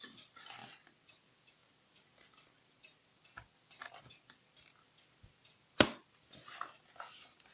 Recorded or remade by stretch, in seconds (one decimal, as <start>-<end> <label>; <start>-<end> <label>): 0.0-7.5 recorded